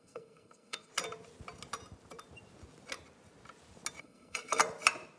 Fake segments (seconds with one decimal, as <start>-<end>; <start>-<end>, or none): 0.0-0.9; 4.0-4.6